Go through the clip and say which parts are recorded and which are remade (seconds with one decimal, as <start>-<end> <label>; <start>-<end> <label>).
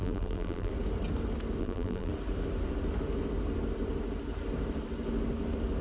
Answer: 0.0-0.7 remade; 0.7-1.6 recorded; 1.6-2.1 remade; 2.1-5.8 recorded